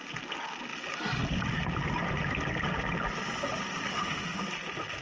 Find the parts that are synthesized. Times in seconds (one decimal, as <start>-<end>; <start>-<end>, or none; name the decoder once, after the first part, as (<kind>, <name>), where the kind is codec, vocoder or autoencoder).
3.9-4.4 (autoencoder, DAC-VAE)

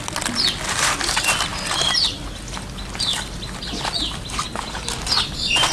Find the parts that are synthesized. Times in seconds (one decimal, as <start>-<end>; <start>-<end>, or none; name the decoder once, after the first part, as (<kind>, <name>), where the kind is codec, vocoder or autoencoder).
none

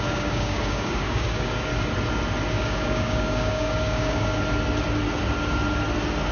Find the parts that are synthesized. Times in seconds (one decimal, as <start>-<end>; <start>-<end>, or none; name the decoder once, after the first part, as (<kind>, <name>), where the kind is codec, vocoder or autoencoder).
0.0-1.7 (codec, DAC); 2.5-4.3

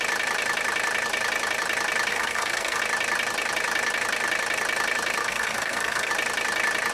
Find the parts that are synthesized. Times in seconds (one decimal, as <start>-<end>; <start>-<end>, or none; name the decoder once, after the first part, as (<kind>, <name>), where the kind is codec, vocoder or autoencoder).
2.1-2.8 (codec, SNAC); 5.2-6.1

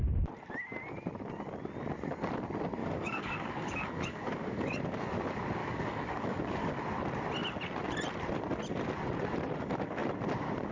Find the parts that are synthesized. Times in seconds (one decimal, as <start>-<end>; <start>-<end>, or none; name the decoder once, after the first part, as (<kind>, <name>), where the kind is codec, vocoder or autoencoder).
2.8-4.8 (codec, DAC); 5.6-6.8